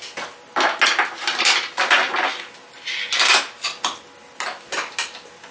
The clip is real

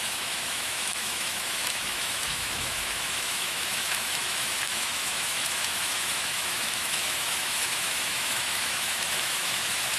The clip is fake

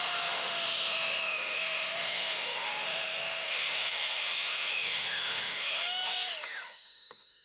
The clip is fake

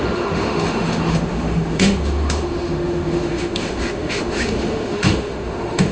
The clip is fake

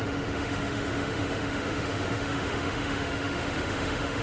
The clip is fake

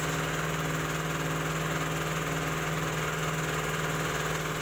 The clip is real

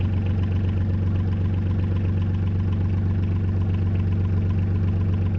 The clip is real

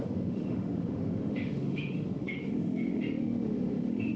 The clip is fake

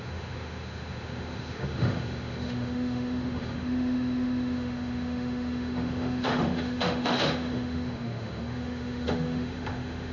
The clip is fake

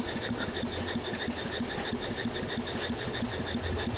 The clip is real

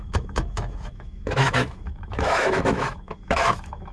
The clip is fake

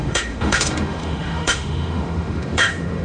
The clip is fake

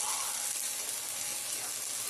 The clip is real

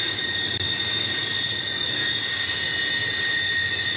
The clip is real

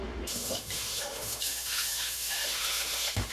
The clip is fake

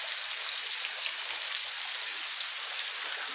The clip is real